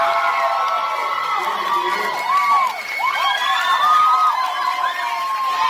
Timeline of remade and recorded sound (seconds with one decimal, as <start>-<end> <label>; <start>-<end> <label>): 0.0-5.7 recorded